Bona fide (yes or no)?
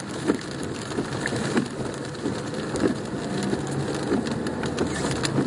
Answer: yes